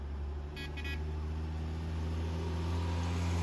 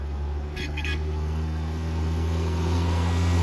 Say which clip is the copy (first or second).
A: second